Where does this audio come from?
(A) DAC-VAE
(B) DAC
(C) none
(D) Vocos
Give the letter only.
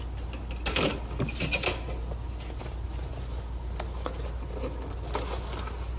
C